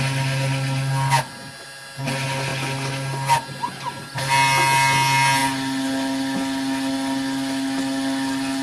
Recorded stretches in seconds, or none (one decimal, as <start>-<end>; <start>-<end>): 0.0-8.6